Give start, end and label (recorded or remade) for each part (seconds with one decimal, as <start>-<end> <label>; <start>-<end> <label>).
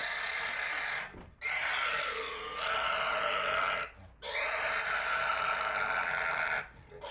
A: 0.0-4.0 recorded; 4.0-5.4 remade; 5.4-7.1 recorded